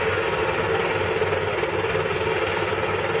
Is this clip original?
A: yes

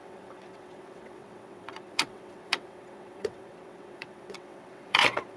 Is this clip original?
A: no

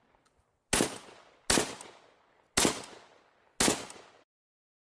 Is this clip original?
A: yes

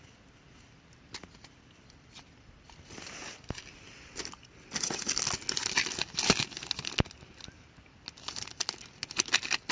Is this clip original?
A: yes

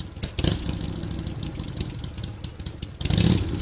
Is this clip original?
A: yes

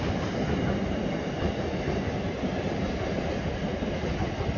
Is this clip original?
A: yes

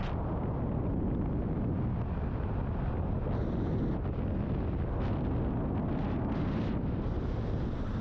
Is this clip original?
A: yes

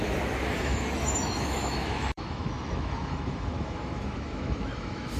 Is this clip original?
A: no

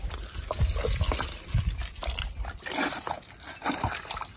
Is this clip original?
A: yes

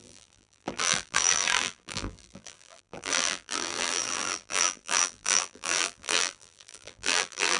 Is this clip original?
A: no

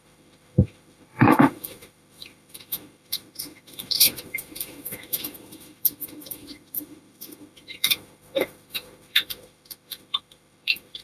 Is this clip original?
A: no